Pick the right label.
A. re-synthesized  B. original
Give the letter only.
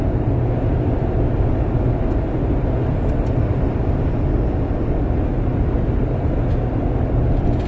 B